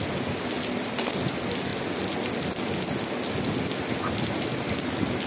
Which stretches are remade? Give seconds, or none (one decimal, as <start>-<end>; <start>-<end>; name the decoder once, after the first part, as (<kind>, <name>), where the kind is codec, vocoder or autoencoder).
none